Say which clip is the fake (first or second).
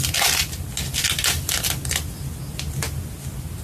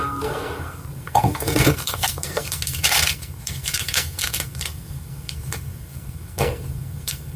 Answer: second